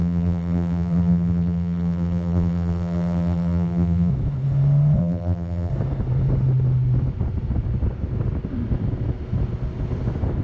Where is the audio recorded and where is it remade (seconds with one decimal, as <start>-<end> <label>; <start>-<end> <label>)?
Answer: 0.0-4.1 remade; 4.1-5.0 recorded; 5.0-5.7 remade; 5.7-10.4 recorded